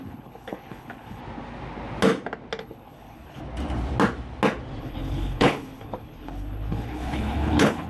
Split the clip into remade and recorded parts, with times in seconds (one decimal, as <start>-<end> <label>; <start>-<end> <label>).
0.0-1.2 remade; 1.2-2.6 recorded; 2.6-3.4 remade; 3.4-4.8 recorded; 4.8-7.9 remade